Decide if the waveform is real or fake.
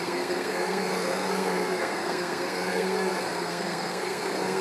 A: fake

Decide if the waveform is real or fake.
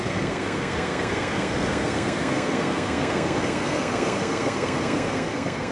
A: fake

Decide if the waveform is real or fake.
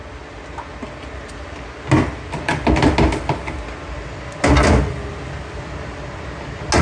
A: real